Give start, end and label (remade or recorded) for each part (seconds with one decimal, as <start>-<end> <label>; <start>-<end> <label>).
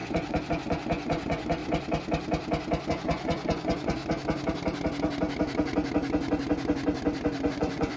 0.0-1.6 remade; 1.6-2.9 recorded; 2.9-4.0 remade; 4.0-7.5 recorded; 7.5-8.0 remade